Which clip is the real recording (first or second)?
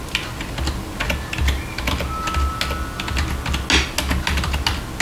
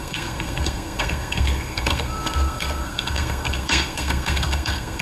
first